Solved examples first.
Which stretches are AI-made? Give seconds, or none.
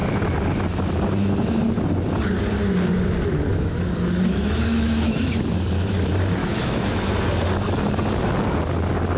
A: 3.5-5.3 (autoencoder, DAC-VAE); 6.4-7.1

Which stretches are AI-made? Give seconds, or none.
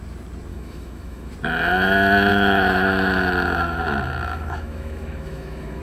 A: 0.5-1.3 (autoencoder, DAC-VAE); 2.3-5.8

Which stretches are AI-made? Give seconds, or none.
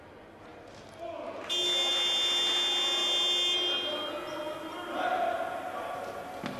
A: none